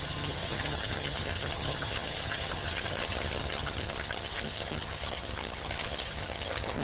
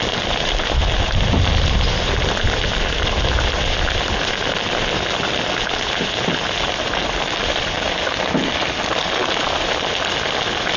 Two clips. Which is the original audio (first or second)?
second